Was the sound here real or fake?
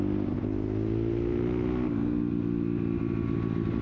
real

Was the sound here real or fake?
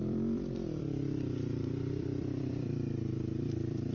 fake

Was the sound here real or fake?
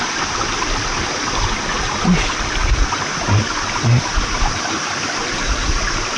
real